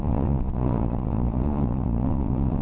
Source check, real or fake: fake